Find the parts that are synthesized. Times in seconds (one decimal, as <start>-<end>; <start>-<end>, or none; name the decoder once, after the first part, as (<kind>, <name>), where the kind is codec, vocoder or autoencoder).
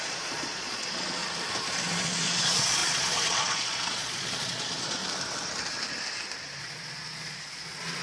0.0-1.2 (vocoder, Vocos); 2.0-5.0; 6.6-8.0